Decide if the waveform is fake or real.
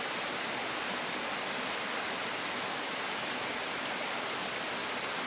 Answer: real